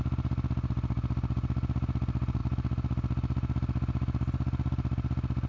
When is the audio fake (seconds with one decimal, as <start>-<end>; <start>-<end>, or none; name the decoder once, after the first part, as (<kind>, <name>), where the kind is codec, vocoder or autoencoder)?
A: none